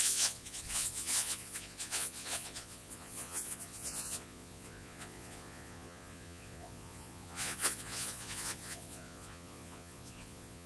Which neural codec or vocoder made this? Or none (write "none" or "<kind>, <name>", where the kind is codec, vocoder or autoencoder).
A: vocoder, Vocos